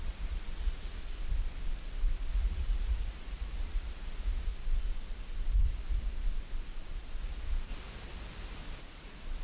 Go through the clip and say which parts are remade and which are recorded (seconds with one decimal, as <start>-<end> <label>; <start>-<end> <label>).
0.0-1.0 remade; 1.0-2.3 recorded; 2.3-4.5 remade; 4.5-7.2 recorded; 7.2-7.7 remade; 7.7-8.8 recorded; 8.8-9.4 remade